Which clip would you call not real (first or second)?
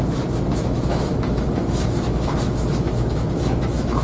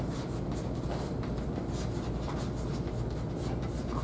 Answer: first